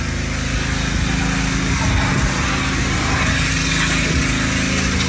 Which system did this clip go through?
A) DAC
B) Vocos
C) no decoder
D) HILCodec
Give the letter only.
C